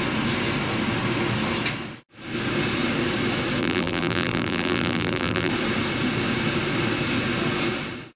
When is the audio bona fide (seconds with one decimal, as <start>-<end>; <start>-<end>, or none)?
0.0-3.6; 5.5-8.2

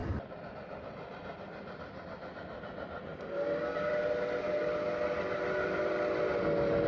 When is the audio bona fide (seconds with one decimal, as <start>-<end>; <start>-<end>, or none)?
0.0-3.1; 3.9-6.9

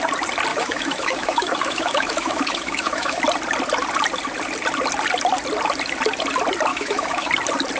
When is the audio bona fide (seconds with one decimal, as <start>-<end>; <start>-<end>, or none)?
0.0-0.5; 3.2-6.7; 7.3-7.8

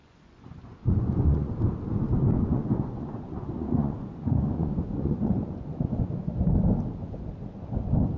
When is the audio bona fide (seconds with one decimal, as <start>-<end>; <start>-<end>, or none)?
1.5-2.3; 6.3-8.2

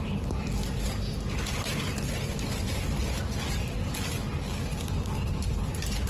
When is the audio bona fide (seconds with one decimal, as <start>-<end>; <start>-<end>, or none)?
0.0-6.1

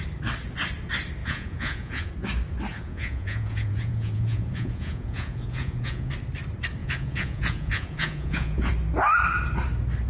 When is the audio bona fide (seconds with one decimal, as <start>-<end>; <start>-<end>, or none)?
0.0-1.2; 2.1-2.7; 6.1-6.8; 8.7-10.1